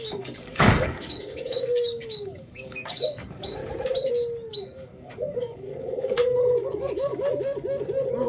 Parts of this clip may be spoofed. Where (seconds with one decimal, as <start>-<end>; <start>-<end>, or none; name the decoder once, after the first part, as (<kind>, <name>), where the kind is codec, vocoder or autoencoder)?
0.0-3.6 (codec, DAC); 4.5-7.1